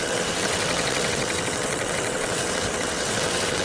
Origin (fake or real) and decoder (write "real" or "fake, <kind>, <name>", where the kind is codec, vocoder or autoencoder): fake, vocoder, WaveNeXt